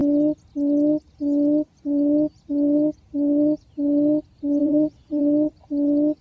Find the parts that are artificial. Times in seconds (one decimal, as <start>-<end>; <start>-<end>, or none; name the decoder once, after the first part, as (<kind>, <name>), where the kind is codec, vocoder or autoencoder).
4.6-5.2 (vocoder, Vocos)